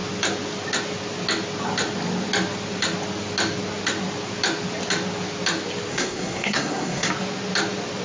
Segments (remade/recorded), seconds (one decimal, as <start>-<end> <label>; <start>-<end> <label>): 0.0-5.9 recorded; 5.9-7.1 remade; 7.1-8.0 recorded